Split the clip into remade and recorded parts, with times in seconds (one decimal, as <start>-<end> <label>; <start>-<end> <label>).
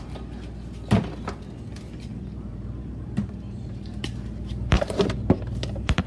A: 0.0-2.1 recorded; 2.1-6.1 remade